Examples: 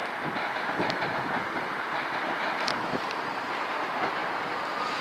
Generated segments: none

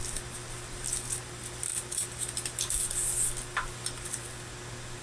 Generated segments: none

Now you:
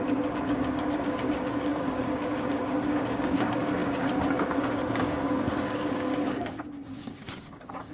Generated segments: 0.0-7.9 (codec, DAC)

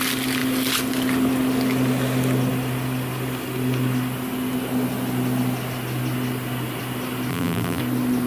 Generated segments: 7.3-7.8 (vocoder, BigVGAN v2)